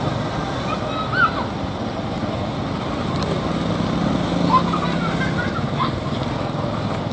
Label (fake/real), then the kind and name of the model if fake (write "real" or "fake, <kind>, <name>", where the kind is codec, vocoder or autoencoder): real